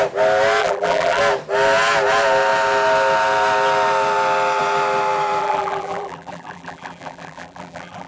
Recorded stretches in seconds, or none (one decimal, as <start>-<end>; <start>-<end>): 0.0-0.6; 1.2-5.4